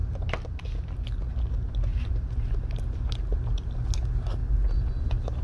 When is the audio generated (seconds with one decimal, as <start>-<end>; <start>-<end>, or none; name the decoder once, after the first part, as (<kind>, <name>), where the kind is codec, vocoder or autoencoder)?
1.9-3.0 (vocoder, BigVGAN v2); 4.4-5.4